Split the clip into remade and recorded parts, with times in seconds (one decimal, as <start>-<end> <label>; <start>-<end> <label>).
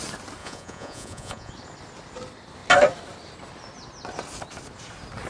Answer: 0.0-0.4 recorded; 0.4-1.5 remade; 1.5-5.3 recorded